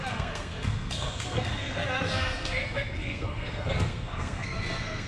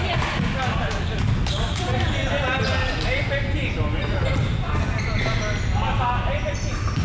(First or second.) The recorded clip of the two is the second